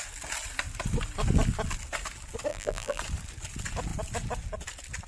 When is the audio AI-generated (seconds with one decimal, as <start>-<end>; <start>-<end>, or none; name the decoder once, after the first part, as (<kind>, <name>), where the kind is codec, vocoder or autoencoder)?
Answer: 2.5-3.0 (vocoder, BigVGAN v2)